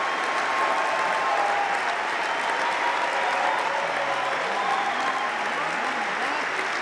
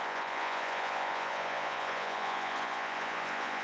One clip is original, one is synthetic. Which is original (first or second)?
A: first